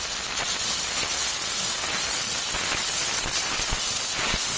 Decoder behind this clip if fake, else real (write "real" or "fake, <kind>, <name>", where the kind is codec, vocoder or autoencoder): real